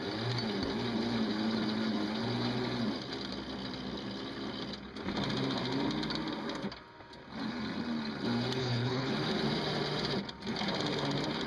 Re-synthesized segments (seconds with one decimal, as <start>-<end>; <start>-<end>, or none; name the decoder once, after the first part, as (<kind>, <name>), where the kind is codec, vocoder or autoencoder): 8.6-9.1 (codec, HILCodec)